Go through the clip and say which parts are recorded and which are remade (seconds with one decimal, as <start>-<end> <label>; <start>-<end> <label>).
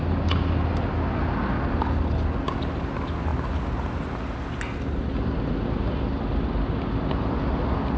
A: 0.0-8.0 recorded